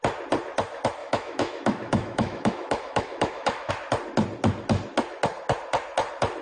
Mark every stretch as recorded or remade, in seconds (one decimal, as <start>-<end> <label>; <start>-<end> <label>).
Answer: 0.0-1.0 recorded; 1.0-3.7 remade; 3.7-6.4 recorded